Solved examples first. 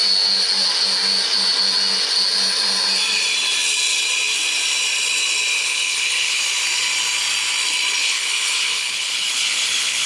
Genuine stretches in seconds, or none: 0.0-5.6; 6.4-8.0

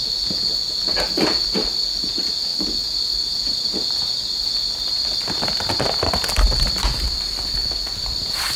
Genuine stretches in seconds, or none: 0.0-7.6